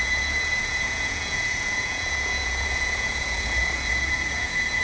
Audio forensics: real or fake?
fake